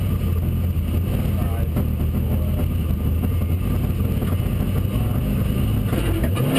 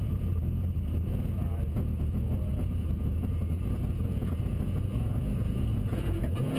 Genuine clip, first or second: first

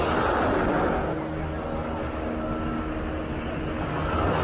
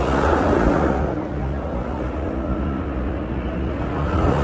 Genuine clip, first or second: first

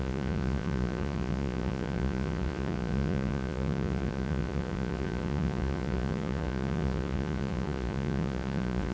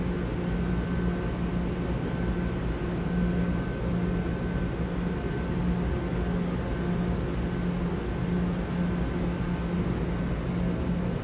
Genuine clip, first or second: second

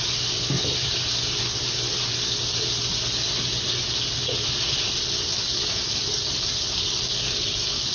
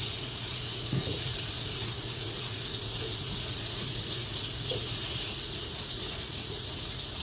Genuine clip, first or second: first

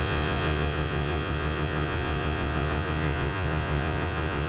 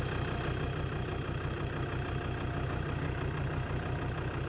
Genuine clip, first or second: second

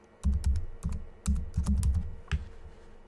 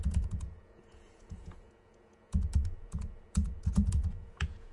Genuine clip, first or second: first